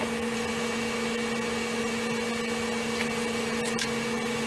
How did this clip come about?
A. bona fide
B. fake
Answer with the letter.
A